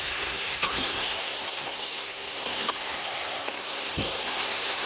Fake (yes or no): yes